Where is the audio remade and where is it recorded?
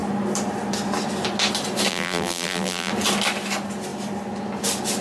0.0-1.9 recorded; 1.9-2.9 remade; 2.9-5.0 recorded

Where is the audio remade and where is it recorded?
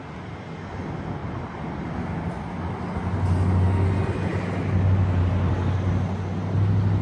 0.0-7.0 recorded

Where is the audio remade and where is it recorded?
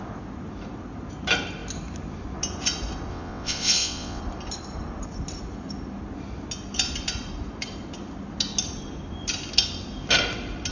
0.0-3.1 recorded; 3.1-4.2 remade; 4.2-10.7 recorded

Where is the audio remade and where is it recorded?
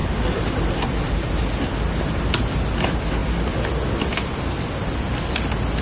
0.0-5.8 recorded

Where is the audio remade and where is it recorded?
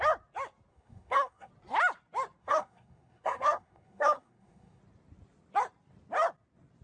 0.0-0.7 recorded; 0.7-1.5 remade; 1.5-2.4 recorded; 2.4-4.8 remade; 4.8-6.8 recorded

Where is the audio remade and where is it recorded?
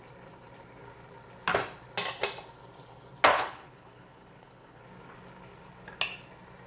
0.0-3.3 recorded; 3.3-4.8 remade; 4.8-6.7 recorded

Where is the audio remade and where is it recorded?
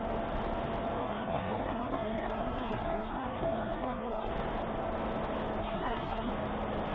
0.0-1.0 recorded; 1.0-4.3 remade; 4.3-5.6 recorded; 5.6-6.3 remade; 6.3-6.9 recorded